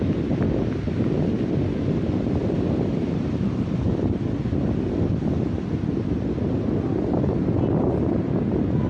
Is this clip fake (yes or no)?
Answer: no